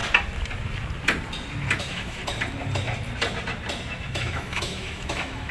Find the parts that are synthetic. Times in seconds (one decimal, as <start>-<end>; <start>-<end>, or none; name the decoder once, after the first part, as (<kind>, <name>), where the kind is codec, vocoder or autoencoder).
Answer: 1.8-2.2 (autoencoder, DAC-VAE); 4.1-5.5